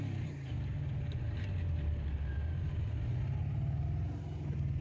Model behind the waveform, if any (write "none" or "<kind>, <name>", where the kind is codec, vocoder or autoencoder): none